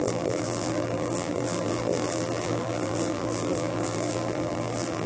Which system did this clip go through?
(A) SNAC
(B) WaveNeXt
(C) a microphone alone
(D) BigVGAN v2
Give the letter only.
D